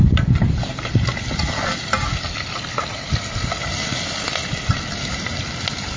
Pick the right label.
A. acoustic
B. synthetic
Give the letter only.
A